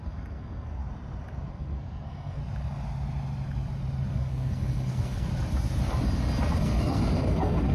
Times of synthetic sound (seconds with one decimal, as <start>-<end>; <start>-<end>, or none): 0.0-0.8; 1.5-2.4; 4.1-5.3; 6.6-7.7